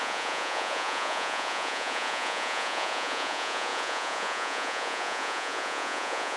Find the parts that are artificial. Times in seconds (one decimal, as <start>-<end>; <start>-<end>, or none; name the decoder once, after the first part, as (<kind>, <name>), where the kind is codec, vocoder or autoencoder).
0.0-6.4 (vocoder, Vocos)